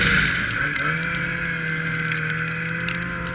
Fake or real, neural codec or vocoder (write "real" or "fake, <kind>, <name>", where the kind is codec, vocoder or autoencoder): real